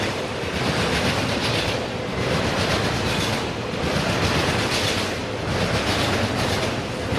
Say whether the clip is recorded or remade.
recorded